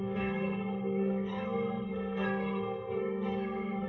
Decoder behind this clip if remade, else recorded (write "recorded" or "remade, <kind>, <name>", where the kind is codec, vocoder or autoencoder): remade, codec, SNAC